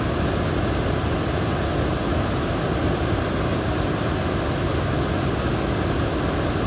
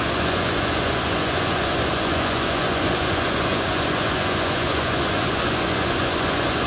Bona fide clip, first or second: first